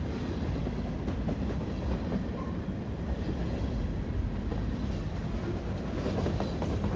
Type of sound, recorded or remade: recorded